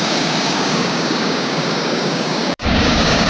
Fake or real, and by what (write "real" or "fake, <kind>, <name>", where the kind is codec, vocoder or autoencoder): fake, codec, DAC